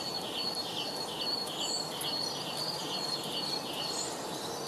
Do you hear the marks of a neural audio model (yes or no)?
no